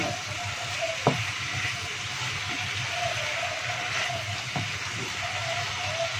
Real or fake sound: real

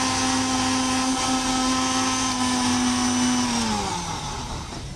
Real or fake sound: real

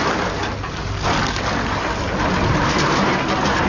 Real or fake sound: real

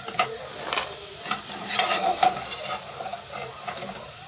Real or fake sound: fake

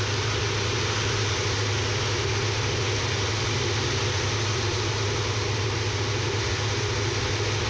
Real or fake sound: real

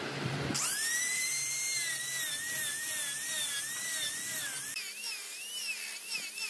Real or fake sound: fake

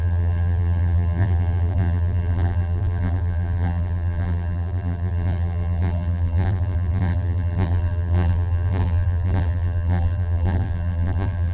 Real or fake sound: fake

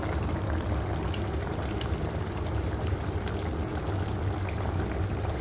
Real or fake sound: real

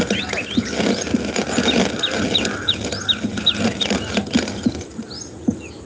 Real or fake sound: real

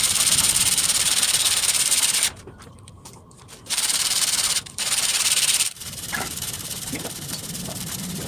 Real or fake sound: fake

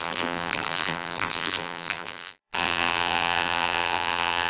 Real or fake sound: fake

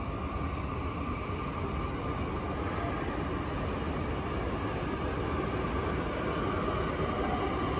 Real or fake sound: real